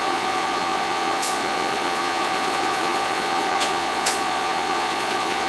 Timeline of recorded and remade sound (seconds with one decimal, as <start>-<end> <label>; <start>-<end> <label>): 0.0-5.5 remade